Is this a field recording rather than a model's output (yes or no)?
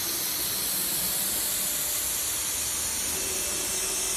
yes